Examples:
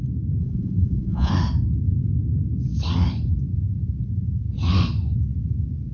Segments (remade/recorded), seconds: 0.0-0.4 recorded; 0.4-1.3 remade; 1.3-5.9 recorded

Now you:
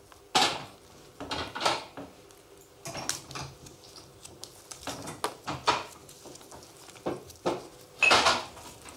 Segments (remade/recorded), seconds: 0.0-9.0 recorded

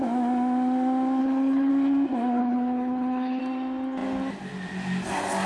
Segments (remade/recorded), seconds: 0.0-1.2 recorded; 1.2-1.7 remade; 1.7-2.4 recorded; 2.4-3.4 remade; 3.4-5.5 recorded

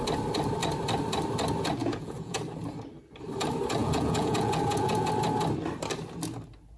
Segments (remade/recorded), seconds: 0.0-1.8 recorded; 1.8-2.4 remade; 2.4-3.8 recorded; 3.8-5.1 remade; 5.1-6.8 recorded

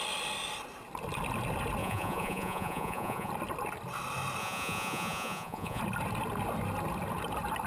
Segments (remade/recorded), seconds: 0.0-1.8 recorded; 1.8-3.3 remade; 3.3-4.4 recorded; 4.4-5.8 remade; 5.8-7.7 recorded

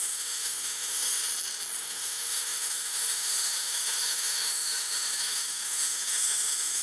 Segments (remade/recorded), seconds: 0.0-1.2 remade; 1.2-1.8 recorded; 1.8-6.8 remade